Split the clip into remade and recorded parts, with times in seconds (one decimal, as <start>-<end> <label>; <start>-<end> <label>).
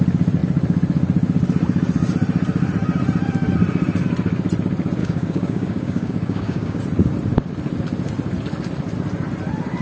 0.0-5.0 recorded; 5.0-6.8 remade; 6.8-9.8 recorded